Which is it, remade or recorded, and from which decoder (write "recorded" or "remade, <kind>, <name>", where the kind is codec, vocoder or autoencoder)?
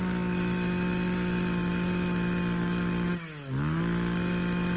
remade, autoencoder, DAC-VAE